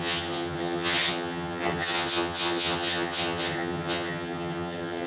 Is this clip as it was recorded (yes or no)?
no